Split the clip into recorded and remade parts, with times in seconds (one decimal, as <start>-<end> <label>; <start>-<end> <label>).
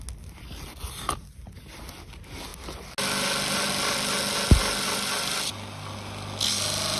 0.0-7.0 recorded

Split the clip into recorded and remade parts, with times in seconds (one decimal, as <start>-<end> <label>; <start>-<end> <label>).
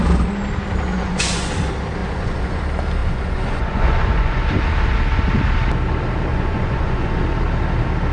0.0-0.9 recorded; 0.9-1.5 remade; 1.5-2.0 recorded; 2.0-2.6 remade; 2.6-3.0 recorded; 3.0-4.6 remade; 4.6-6.3 recorded; 6.3-7.2 remade; 7.2-8.1 recorded